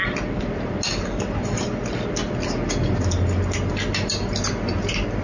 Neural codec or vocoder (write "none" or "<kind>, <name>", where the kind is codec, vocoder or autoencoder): none